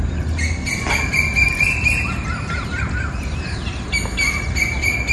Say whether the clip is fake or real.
real